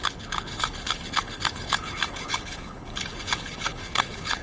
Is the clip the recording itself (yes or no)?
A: no